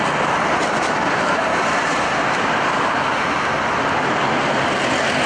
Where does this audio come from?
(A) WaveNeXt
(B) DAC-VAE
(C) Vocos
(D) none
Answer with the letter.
D